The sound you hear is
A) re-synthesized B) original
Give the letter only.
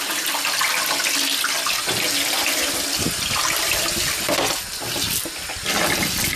B